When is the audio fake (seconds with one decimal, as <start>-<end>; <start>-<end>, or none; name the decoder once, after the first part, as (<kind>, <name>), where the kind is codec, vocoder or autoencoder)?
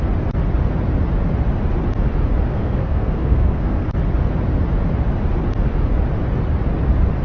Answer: 2.5-3.9 (codec, SNAC)